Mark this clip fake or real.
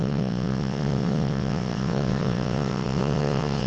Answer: fake